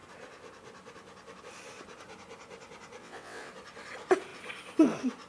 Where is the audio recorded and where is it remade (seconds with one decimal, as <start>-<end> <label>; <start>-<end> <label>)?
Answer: 0.0-3.0 recorded; 3.0-3.5 remade; 3.5-5.3 recorded